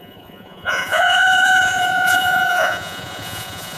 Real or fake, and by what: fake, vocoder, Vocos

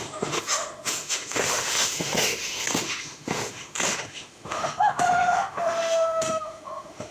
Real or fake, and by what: fake, autoencoder, DAC-VAE